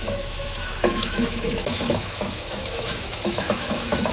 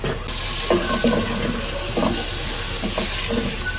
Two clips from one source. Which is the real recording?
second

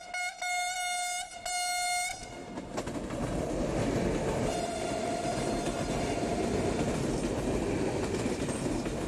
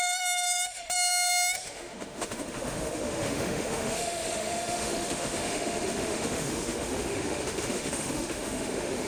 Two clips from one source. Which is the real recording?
first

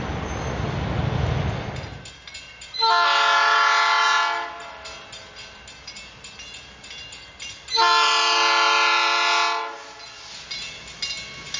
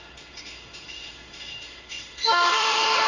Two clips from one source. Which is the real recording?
first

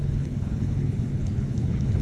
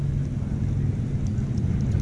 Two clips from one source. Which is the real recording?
second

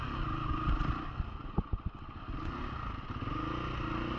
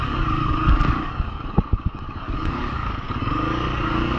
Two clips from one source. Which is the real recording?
first